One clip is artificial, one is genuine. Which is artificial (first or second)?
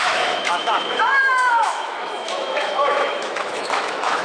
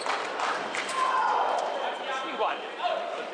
first